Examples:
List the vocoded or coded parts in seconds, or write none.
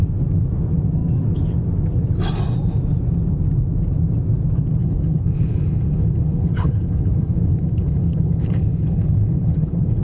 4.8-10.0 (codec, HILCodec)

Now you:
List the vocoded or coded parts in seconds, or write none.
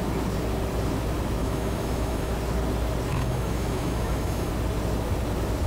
1.4-2.3 (autoencoder, DAC-VAE); 3.1-4.5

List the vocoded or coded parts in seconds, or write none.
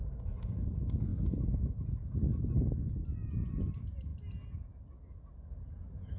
none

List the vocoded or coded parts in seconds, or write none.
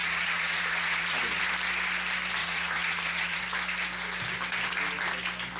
0.0-1.4 (vocoder, Vocos); 2.4-3.4